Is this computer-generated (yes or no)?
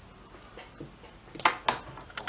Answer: no